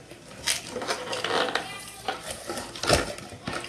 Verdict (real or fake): real